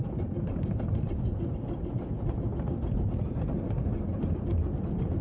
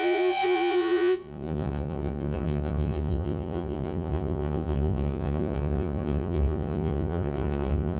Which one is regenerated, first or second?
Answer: second